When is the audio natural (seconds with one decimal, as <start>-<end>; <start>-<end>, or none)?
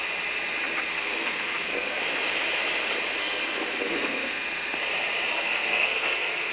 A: 0.0-0.9; 2.0-3.2; 4.4-5.3